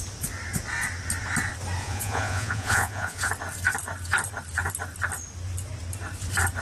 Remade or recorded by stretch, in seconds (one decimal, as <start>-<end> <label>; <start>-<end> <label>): 0.0-1.8 recorded; 1.8-3.3 remade; 3.3-6.6 recorded